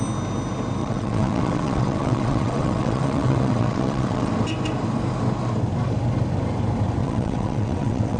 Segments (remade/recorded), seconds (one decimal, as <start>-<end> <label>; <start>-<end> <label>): 0.0-0.8 recorded; 0.8-4.3 remade; 4.3-7.0 recorded; 7.0-8.2 remade